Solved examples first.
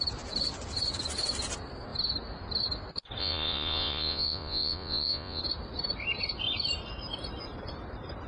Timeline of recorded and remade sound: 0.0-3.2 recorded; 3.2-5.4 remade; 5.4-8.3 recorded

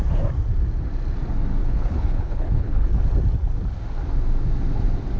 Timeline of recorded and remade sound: 0.0-1.6 recorded; 1.6-3.0 remade; 3.0-5.2 recorded

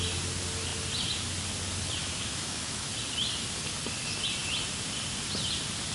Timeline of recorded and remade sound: 0.0-2.0 recorded; 2.0-2.9 remade; 2.9-5.9 recorded